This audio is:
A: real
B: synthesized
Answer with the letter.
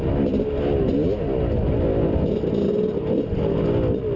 A